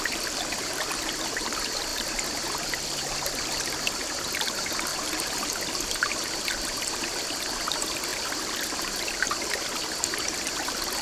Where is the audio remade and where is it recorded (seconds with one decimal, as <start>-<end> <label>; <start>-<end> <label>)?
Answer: 0.0-4.9 recorded; 4.9-5.5 remade; 5.5-11.0 recorded